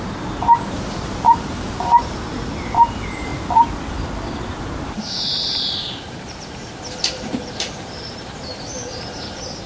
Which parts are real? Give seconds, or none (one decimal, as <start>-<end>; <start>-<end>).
3.3-4.6